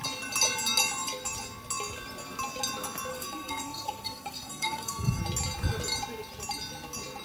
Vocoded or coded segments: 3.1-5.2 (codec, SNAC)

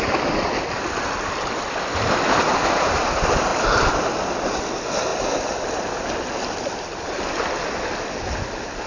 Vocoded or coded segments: none

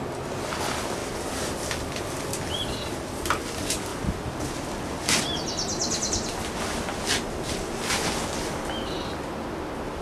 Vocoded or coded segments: none

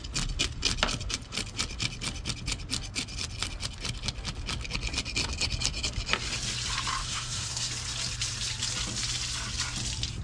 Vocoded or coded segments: 7.0-7.7 (codec, SNAC)

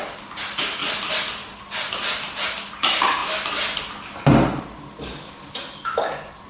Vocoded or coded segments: none